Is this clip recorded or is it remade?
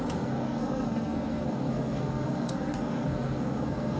remade